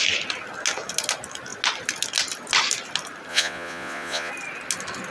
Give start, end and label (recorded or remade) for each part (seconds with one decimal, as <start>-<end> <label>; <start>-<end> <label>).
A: 0.0-3.3 recorded; 3.3-4.3 remade; 4.3-5.1 recorded

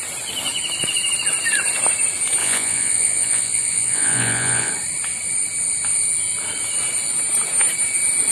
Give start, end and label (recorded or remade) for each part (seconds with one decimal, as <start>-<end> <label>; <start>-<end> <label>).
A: 0.0-2.4 recorded; 2.4-4.7 remade; 4.7-8.3 recorded